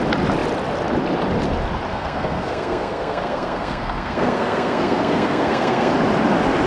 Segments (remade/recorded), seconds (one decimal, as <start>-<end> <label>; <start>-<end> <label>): 0.0-1.9 recorded; 1.9-5.9 remade; 5.9-6.7 recorded